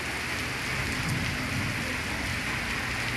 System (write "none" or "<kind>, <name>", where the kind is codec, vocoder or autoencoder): none